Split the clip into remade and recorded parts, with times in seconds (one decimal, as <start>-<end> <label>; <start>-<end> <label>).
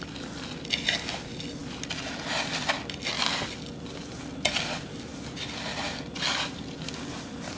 0.0-7.6 recorded